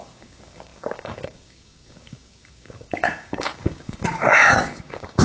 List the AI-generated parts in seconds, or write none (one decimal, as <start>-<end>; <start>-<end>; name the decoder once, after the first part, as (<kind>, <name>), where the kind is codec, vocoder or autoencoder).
0.0-5.2 (codec, DAC)